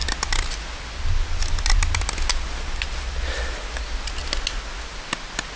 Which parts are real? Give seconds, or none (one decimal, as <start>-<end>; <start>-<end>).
0.0-5.6